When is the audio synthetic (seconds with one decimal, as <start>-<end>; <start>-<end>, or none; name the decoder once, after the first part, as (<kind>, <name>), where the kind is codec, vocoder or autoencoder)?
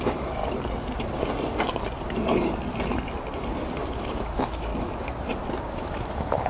0.0-0.4 (autoencoder, DAC-VAE); 3.9-4.7; 5.7-6.5